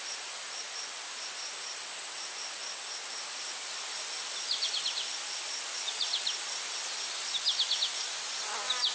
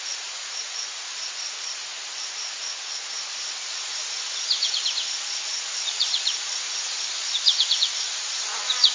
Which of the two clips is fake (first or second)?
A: second